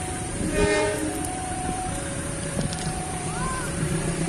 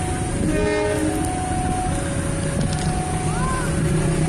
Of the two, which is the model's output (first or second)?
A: first